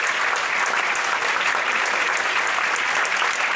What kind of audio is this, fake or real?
real